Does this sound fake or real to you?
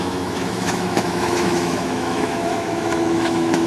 fake